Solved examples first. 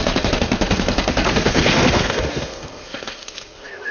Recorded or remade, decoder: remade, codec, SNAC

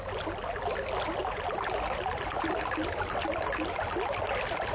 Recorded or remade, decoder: recorded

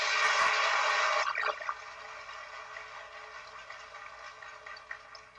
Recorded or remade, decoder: recorded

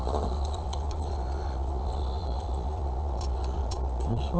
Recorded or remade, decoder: remade, vocoder, Vocos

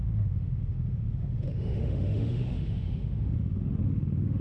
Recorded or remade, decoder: remade, autoencoder, DAC-VAE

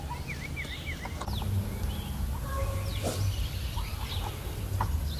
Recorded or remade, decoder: recorded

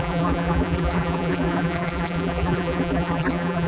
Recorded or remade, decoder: remade, vocoder, BigVGAN v2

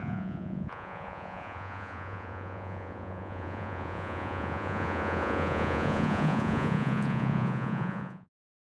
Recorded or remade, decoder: remade, vocoder, Vocos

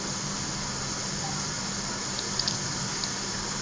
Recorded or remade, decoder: recorded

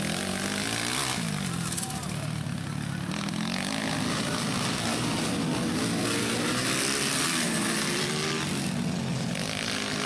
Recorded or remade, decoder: recorded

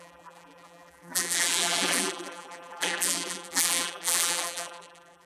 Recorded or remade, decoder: remade, vocoder, BigVGAN v2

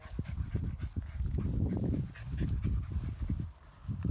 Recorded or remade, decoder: recorded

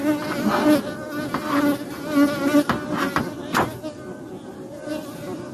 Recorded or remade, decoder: recorded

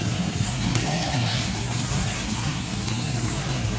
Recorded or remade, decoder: remade, codec, SNAC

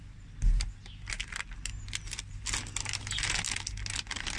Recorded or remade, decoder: recorded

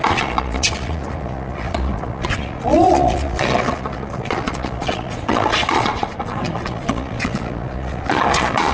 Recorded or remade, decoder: remade, vocoder, Vocos